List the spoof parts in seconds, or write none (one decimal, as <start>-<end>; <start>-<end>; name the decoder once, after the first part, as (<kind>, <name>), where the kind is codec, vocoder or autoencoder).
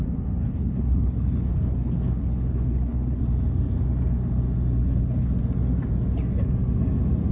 0.4-3.2 (codec, HILCodec); 4.8-5.3